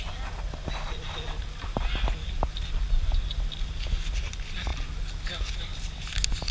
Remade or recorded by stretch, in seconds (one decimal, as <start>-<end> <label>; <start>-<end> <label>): 0.0-6.5 recorded